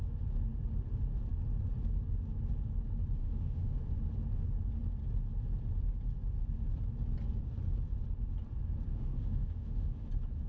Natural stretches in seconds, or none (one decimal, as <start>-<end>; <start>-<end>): 0.0-3.2; 3.7-8.9; 10.1-10.5